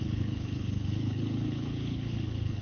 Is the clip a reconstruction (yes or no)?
yes